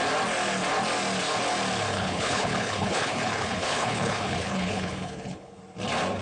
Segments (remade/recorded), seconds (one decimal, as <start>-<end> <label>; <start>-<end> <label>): 0.0-1.9 recorded; 1.9-5.6 remade; 5.6-6.2 recorded